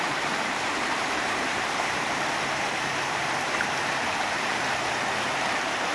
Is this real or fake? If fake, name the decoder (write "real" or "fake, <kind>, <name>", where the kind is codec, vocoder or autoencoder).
fake, vocoder, BigVGAN v2